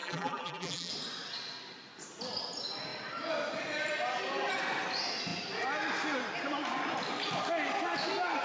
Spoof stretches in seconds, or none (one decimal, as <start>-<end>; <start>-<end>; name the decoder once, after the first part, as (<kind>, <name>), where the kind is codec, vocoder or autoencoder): 0.0-0.9 (vocoder, BigVGAN v2)